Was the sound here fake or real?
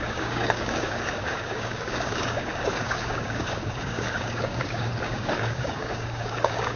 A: fake